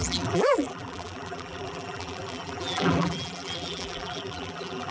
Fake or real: fake